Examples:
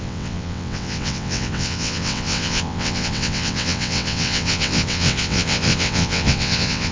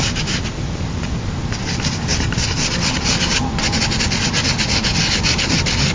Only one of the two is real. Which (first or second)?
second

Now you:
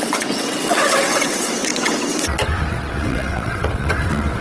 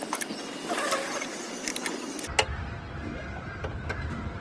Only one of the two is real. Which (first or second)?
second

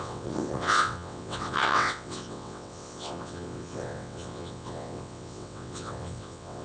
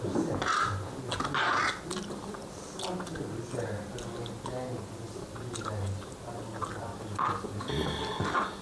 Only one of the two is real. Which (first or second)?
second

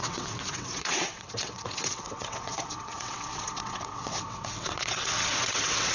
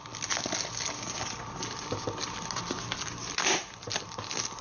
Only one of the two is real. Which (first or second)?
second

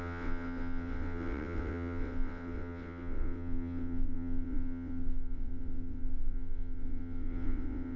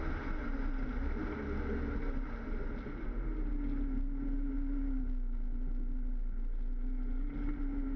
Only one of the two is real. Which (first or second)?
second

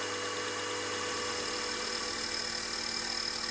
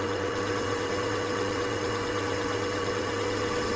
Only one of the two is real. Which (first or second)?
first